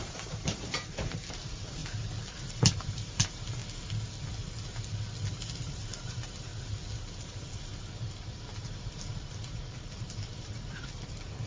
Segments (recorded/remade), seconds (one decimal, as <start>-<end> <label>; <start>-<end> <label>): 0.0-1.8 remade; 1.8-2.5 recorded; 2.5-3.6 remade; 3.6-5.3 recorded; 5.3-6.5 remade; 6.5-7.2 recorded; 7.2-7.7 remade; 7.7-8.6 recorded; 8.6-11.5 remade